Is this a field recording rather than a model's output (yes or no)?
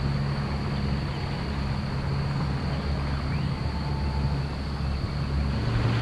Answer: yes